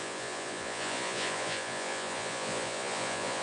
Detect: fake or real fake